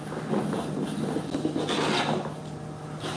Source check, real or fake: real